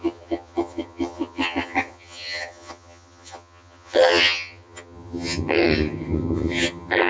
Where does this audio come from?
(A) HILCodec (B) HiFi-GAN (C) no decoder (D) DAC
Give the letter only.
B